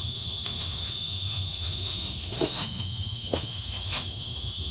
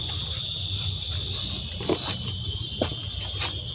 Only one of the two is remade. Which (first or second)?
first